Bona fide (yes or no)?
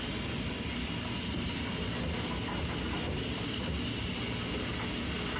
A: yes